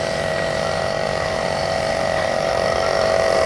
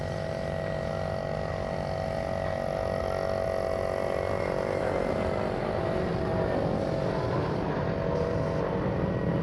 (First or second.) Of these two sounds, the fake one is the first